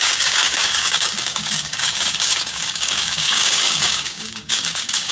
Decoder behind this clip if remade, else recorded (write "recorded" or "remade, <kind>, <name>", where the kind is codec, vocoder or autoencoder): remade, codec, DAC